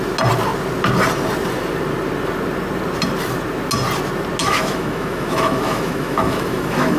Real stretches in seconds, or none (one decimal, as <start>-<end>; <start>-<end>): 0.0-4.4